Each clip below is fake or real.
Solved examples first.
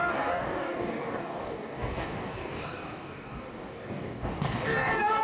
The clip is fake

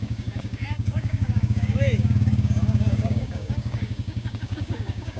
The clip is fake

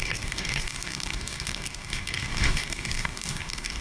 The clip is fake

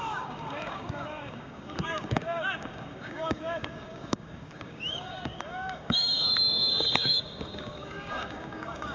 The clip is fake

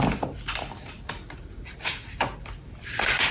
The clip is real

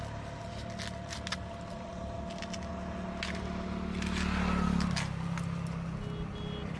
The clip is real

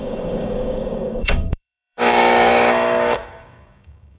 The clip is fake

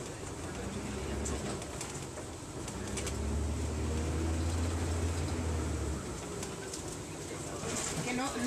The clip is real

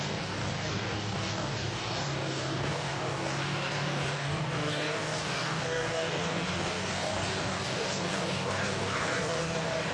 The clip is fake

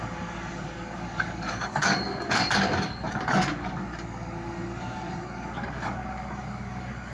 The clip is fake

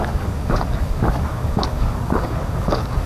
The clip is fake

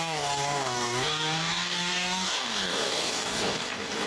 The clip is fake